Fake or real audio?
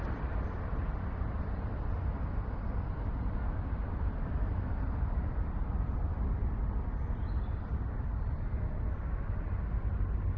real